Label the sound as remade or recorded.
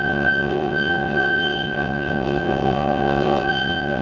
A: remade